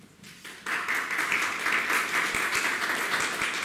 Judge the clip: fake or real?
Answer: real